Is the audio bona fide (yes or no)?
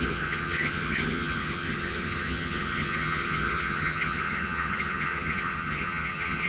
no